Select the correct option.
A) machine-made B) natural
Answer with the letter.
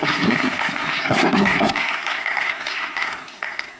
A